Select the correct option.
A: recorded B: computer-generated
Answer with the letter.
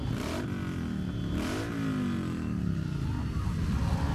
A